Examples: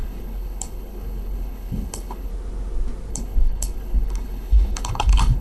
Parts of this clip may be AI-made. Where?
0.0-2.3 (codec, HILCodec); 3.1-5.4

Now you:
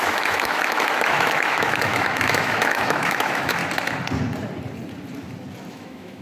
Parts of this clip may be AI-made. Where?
0.0-3.6 (autoencoder, DAC-VAE); 5.7-6.2

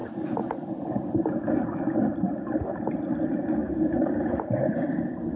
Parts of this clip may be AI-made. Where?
3.6-4.2 (codec, DAC)

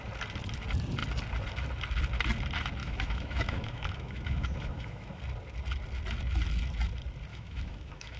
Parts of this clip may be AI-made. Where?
2.8-5.2 (autoencoder, DAC-VAE); 7.3-8.2

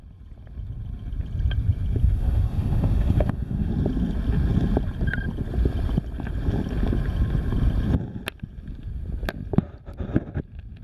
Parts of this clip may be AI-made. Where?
2.0-3.7 (autoencoder, DAC-VAE)